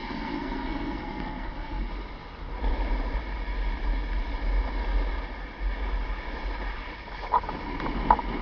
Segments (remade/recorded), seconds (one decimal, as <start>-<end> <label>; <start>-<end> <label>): 0.0-1.9 remade; 1.9-8.4 recorded